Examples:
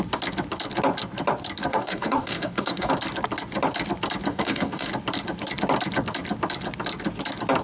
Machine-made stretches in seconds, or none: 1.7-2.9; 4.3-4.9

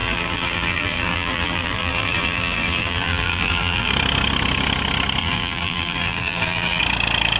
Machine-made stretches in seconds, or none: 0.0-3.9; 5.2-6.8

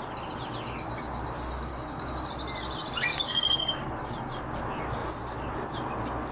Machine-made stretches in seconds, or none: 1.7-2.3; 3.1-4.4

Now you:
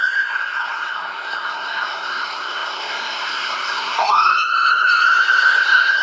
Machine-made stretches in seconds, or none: 0.0-6.0